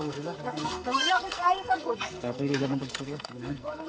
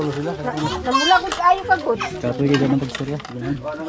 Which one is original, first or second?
second